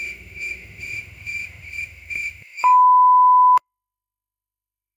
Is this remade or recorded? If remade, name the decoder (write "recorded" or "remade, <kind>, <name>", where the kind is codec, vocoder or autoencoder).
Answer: remade, autoencoder, DAC-VAE